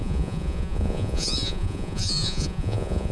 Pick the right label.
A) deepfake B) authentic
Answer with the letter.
A